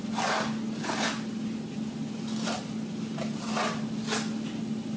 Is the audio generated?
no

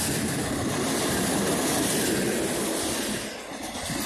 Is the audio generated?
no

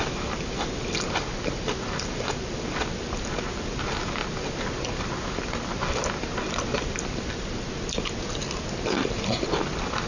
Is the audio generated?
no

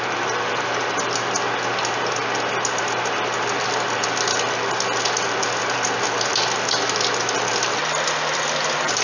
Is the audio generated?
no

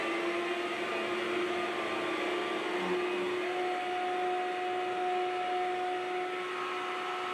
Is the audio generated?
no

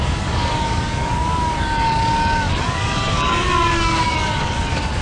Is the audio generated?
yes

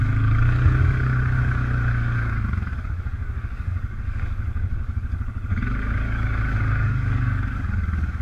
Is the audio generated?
yes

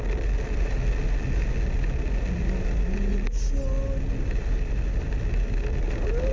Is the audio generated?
no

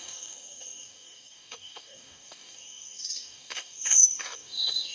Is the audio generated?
yes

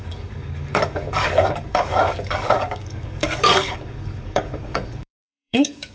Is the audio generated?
yes